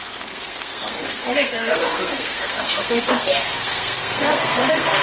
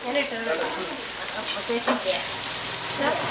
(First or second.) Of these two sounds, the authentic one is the second